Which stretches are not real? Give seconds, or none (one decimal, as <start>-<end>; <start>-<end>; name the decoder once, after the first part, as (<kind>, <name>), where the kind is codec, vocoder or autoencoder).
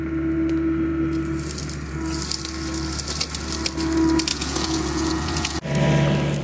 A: 4.3-5.6 (vocoder, Vocos)